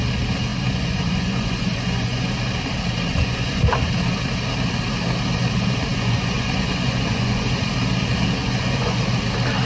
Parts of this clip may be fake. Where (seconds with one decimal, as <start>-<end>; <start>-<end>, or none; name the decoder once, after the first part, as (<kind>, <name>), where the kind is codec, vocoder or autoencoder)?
0.5-2.3 (vocoder, Vocos); 3.1-3.6; 5.9-7.7; 8.4-9.0